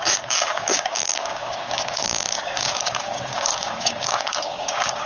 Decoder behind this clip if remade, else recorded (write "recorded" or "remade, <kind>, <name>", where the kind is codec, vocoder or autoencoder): remade, codec, DAC